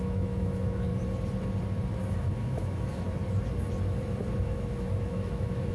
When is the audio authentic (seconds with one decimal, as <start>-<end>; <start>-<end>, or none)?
0.9-2.2; 3.2-4.4